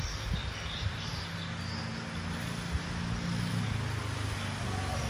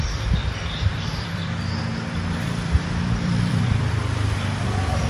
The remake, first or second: second